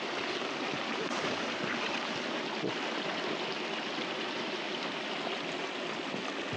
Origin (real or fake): real